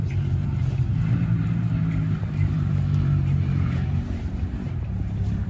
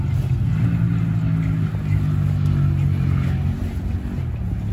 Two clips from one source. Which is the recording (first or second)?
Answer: second